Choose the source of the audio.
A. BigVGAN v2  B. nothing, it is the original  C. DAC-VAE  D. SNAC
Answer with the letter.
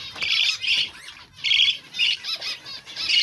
B